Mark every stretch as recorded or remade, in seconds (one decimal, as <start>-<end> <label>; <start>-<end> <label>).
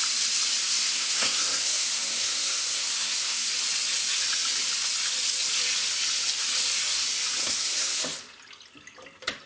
0.0-0.6 recorded; 0.6-3.5 remade; 3.5-7.4 recorded; 7.4-8.0 remade; 8.0-9.5 recorded